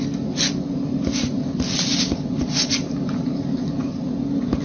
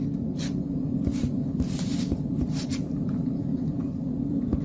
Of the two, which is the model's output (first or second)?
second